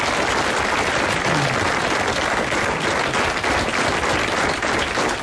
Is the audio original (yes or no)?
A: yes